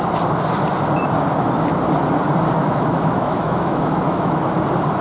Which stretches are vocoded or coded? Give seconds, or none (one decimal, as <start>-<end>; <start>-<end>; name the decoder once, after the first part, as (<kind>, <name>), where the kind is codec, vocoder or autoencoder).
2.6-4.4 (autoencoder, DAC-VAE)